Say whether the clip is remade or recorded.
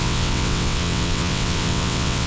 remade